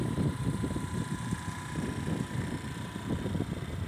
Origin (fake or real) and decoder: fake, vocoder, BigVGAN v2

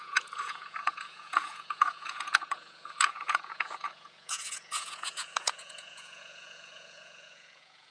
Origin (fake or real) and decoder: fake, vocoder, Vocos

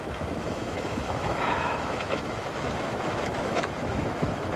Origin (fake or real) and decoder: fake, autoencoder, DAC-VAE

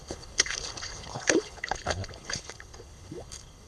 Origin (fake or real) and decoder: fake, codec, HILCodec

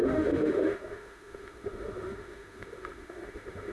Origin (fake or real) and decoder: fake, autoencoder, DAC-VAE